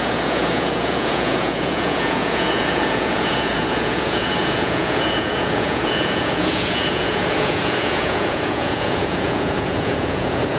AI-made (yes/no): yes